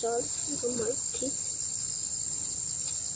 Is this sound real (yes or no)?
yes